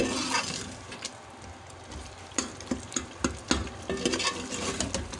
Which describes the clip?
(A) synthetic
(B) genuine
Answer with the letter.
B